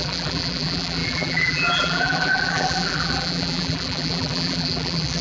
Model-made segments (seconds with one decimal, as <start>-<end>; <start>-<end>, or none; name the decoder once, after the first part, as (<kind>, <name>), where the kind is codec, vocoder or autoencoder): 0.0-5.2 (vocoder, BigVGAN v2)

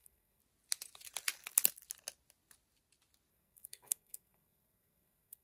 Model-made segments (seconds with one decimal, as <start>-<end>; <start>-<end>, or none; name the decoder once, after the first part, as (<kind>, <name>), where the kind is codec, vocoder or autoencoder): 0.0-0.4 (codec, SNAC); 3.3-5.4

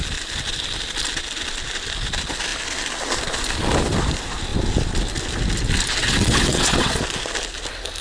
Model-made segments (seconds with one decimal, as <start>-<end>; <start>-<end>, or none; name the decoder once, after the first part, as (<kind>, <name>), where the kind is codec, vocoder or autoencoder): 6.0-7.0 (vocoder, WaveNeXt)

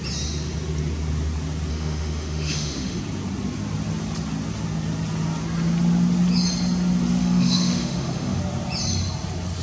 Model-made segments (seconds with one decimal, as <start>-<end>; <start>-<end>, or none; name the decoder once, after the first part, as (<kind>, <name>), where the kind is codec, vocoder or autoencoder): 1.7-3.0 (autoencoder, DAC-VAE); 7.2-8.4

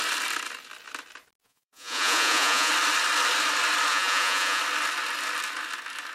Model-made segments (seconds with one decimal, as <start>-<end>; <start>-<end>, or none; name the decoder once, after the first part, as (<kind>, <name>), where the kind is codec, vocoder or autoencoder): 1.4-2.7 (vocoder, Vocos); 3.9-4.6